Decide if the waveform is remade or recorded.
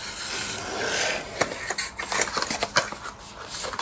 recorded